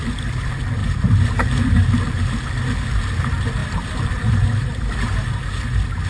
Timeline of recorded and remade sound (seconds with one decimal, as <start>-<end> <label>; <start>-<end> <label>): 0.0-0.8 recorded; 0.8-1.9 remade; 1.9-3.6 recorded; 3.6-5.4 remade; 5.4-6.1 recorded